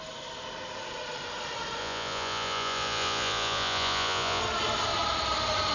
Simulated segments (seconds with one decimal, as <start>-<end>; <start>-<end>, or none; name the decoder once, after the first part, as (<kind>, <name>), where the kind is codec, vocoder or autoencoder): 1.8-4.4 (vocoder, Vocos)